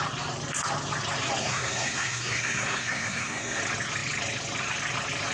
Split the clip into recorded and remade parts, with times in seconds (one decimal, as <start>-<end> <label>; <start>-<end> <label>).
0.0-1.4 recorded; 1.4-3.6 remade; 3.6-5.3 recorded